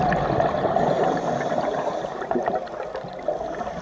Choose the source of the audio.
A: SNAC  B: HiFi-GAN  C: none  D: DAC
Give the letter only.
C